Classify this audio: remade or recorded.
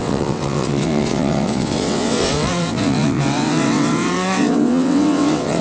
remade